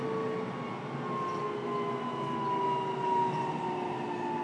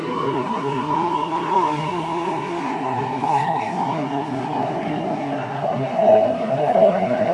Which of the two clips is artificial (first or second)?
second